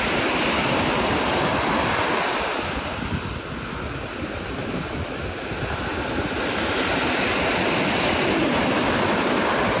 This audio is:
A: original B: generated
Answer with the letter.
A